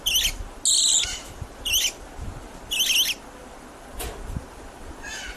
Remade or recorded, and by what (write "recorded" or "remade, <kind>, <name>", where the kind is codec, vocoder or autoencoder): recorded